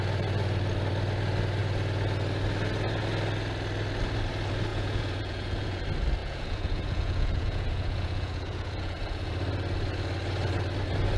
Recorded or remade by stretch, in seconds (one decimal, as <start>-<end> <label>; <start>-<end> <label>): 0.0-4.7 recorded; 4.7-5.8 remade; 5.8-6.2 recorded; 6.2-9.3 remade; 9.3-11.2 recorded